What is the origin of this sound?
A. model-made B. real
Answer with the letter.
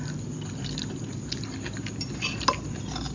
B